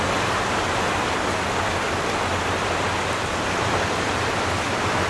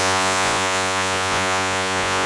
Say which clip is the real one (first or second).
first